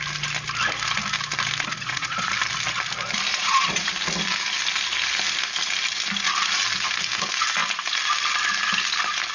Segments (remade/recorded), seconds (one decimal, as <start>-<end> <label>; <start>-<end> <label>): 0.0-1.7 recorded; 1.7-2.3 remade; 2.3-3.3 recorded; 3.3-3.9 remade; 3.9-9.3 recorded